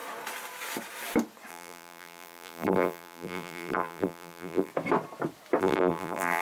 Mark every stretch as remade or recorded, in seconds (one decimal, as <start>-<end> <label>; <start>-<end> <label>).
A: 0.0-1.5 recorded; 1.5-4.7 remade; 4.7-5.6 recorded; 5.6-6.4 remade